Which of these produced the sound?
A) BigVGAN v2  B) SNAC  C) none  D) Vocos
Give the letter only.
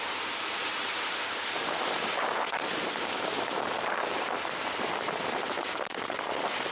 A